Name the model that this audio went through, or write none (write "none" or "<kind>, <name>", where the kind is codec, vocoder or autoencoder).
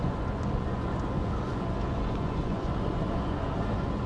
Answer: vocoder, Vocos